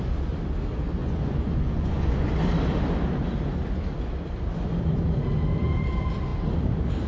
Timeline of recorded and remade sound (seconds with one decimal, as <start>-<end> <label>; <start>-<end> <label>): 0.0-1.0 recorded; 1.0-2.3 remade; 2.3-7.1 recorded